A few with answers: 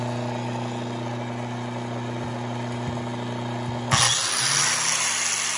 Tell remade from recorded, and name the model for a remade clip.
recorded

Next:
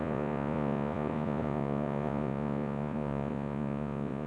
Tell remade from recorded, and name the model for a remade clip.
remade, vocoder, Vocos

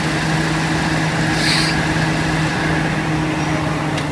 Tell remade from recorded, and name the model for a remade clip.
recorded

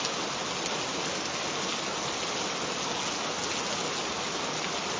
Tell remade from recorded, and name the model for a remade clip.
recorded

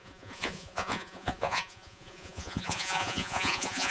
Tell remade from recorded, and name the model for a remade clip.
remade, vocoder, Vocos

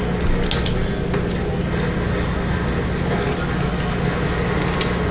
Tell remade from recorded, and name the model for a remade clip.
recorded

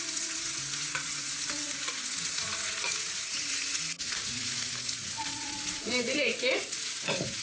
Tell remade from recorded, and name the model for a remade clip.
remade, vocoder, Vocos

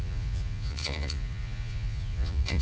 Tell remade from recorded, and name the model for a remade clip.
remade, vocoder, Vocos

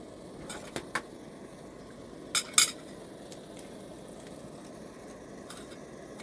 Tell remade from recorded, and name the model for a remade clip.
recorded